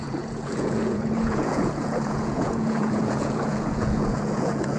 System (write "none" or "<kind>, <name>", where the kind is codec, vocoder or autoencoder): vocoder, Vocos